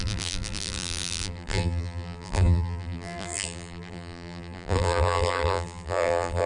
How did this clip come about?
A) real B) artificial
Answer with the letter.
B